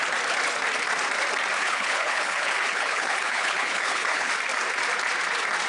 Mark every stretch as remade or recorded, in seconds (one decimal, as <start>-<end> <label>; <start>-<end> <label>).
0.0-1.6 recorded; 1.6-4.3 remade; 4.3-5.7 recorded